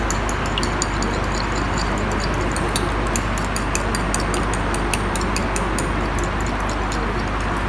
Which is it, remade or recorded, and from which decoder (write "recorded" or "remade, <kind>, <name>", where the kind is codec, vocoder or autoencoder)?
recorded